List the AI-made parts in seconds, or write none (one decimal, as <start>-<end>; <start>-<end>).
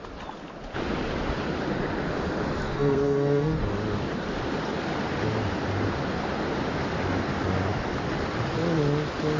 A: 2.6-3.6